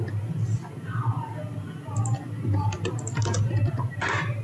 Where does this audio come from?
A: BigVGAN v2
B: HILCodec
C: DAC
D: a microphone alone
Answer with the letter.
D